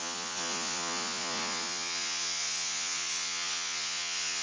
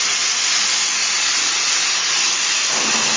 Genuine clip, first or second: second